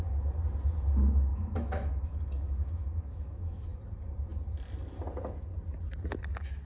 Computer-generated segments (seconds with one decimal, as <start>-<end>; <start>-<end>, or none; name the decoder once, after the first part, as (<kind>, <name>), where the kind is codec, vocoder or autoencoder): 1.3-3.8 (autoencoder, DAC-VAE)